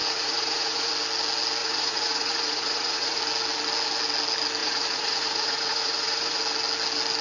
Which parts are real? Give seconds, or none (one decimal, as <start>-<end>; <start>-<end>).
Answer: 0.9-1.6; 3.2-4.6; 6.4-7.2